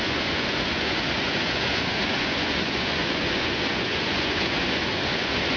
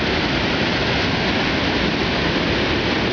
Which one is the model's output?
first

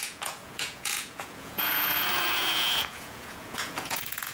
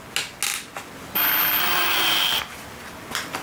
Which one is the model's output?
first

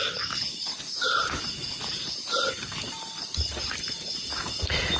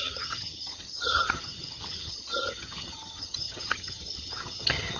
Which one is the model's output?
second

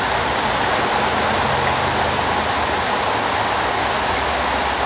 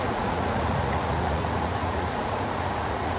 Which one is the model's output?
second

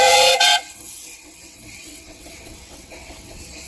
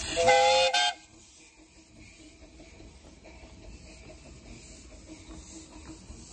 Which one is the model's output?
first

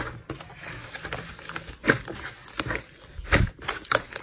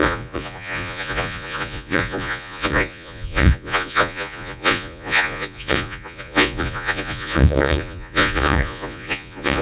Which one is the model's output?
second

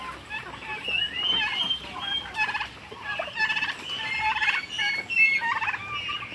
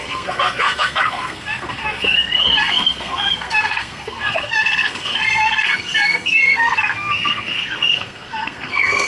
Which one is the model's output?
second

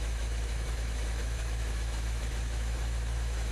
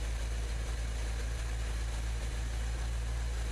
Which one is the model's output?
first